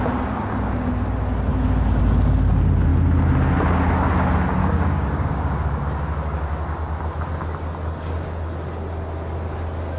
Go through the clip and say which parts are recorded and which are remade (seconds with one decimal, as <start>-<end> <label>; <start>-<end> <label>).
0.0-4.6 recorded; 4.6-5.8 remade; 5.8-10.0 recorded